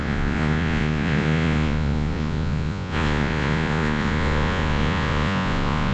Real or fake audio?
fake